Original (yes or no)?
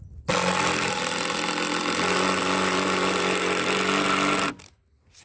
yes